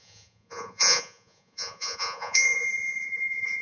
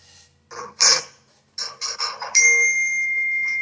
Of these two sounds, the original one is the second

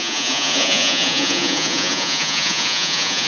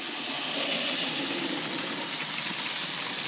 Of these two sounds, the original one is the second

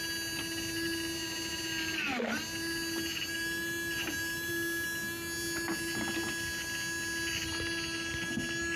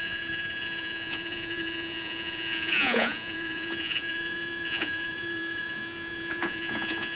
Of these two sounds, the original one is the first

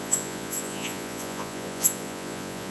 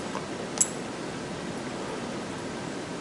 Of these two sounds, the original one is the second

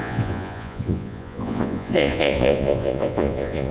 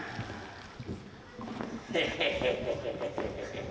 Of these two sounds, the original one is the second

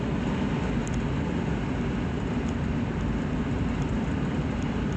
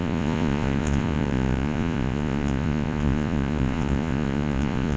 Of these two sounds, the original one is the first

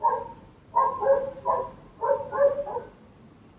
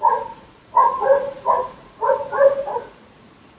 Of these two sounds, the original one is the first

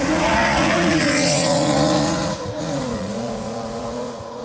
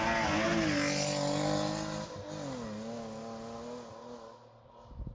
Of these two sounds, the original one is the second